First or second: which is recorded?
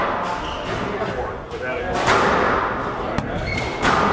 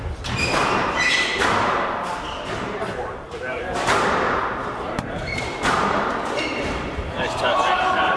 first